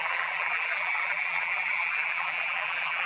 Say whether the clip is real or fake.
fake